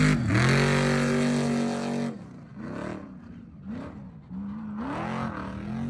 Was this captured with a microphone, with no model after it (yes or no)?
yes